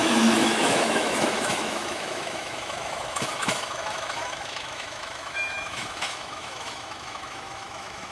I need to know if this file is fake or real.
fake